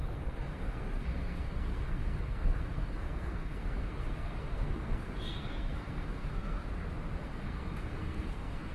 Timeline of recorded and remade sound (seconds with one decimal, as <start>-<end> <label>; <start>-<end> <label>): 0.0-6.6 remade; 6.6-7.1 recorded; 7.1-8.7 remade